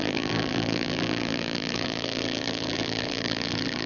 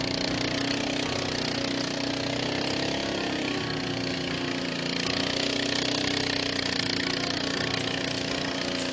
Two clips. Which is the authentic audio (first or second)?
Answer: second